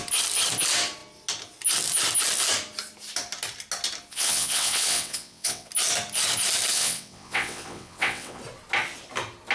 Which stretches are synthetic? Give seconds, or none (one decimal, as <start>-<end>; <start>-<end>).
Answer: 4.1-5.7; 6.7-8.4